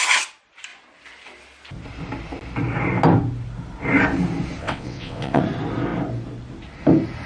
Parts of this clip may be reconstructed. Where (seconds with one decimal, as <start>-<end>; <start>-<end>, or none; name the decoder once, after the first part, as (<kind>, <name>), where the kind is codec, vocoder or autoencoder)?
4.6-5.4 (vocoder, WaveNeXt)

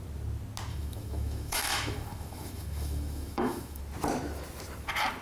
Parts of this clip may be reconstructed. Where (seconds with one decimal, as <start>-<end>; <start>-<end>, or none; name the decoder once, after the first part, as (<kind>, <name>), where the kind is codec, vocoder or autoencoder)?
0.7-3.8 (autoencoder, DAC-VAE)

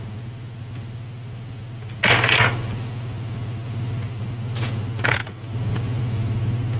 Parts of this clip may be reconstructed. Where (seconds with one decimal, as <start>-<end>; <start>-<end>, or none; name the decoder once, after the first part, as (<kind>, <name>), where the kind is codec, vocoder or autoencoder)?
none

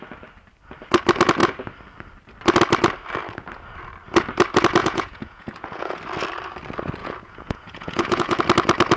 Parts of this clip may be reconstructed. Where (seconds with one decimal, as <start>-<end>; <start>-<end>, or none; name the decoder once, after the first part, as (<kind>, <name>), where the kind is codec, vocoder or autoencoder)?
4.8-6.0 (vocoder, Vocos); 7.0-8.4

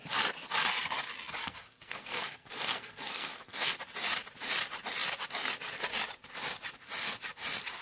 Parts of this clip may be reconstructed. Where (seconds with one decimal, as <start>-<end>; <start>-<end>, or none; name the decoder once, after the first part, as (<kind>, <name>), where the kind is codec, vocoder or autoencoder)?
1.4-3.8 (codec, SNAC)

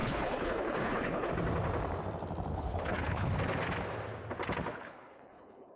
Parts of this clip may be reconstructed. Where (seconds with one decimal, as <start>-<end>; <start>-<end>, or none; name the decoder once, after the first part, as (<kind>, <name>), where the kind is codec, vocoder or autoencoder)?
0.0-1.3 (codec, HILCodec); 2.5-3.3; 4.7-5.8

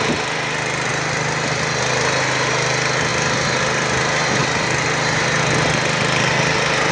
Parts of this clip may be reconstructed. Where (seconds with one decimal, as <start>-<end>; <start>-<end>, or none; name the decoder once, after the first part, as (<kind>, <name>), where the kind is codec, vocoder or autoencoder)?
none

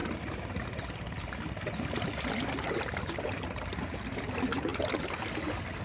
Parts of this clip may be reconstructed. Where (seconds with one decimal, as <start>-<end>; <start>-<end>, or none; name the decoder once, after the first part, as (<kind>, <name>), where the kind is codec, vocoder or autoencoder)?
none